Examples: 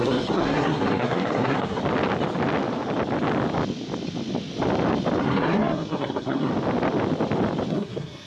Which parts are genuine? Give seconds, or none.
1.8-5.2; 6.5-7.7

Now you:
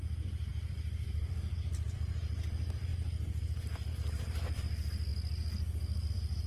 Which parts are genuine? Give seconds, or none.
2.9-3.9; 5.1-6.1

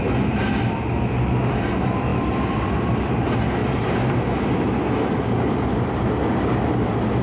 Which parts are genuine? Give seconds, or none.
0.0-3.6; 4.2-7.2

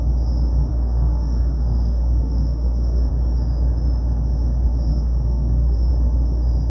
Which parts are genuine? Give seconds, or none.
0.0-0.7; 3.1-4.9; 5.9-6.7

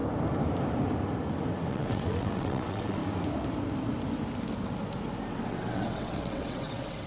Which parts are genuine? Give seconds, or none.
0.0-1.7; 3.0-5.3

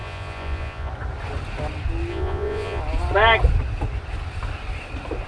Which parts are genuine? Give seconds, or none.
0.9-2.1; 2.8-5.3

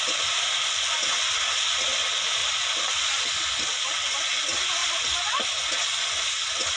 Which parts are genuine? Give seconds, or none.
0.0-2.4; 3.2-6.8